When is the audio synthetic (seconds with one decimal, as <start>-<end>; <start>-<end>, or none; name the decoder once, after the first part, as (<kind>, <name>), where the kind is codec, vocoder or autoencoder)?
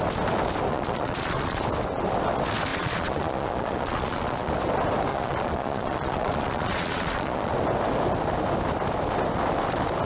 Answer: 0.7-1.6 (vocoder, Vocos); 2.7-4.5; 5.1-7.5